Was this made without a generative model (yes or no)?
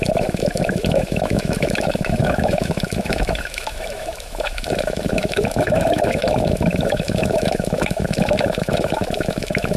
no